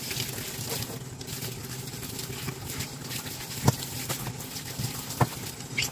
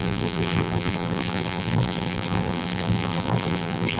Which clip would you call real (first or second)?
first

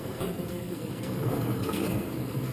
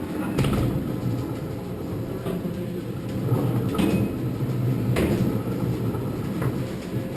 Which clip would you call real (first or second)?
second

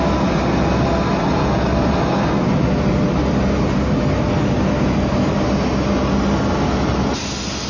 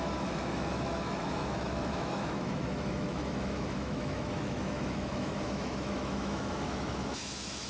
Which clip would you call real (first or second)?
first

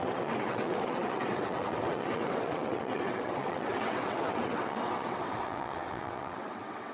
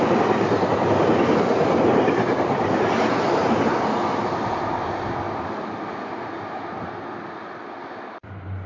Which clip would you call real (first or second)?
second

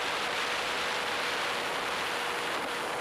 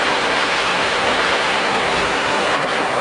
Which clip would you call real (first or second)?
first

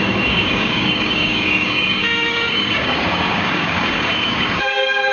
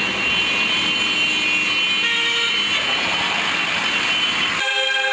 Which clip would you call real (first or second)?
second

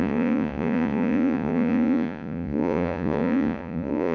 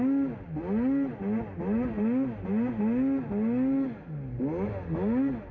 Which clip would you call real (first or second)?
second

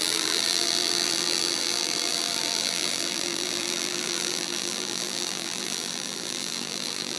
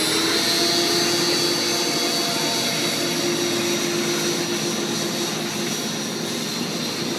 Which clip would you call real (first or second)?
second